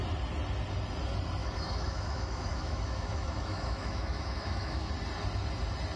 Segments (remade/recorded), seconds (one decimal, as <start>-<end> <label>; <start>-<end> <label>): 0.0-1.4 recorded; 1.4-4.9 remade; 4.9-6.0 recorded